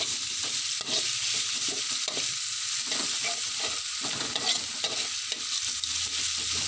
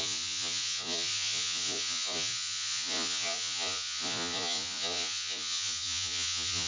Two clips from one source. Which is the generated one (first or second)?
second